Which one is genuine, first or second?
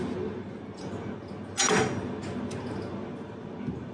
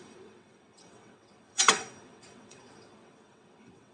first